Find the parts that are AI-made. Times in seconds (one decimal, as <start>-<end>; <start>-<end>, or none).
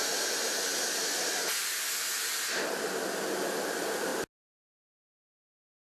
none